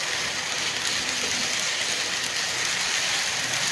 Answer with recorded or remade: recorded